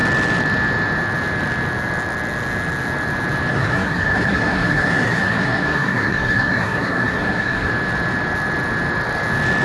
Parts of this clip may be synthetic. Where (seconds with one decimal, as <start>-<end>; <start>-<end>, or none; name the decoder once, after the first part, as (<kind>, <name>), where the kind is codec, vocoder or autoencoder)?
3.5-7.7 (codec, SNAC)